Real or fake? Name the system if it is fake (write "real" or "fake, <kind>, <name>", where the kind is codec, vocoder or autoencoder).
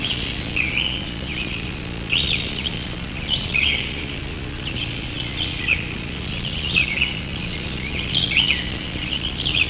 fake, vocoder, Vocos